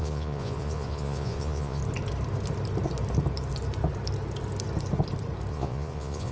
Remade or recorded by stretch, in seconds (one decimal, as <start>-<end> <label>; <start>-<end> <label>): 0.0-1.8 remade; 1.8-5.5 recorded; 5.5-6.3 remade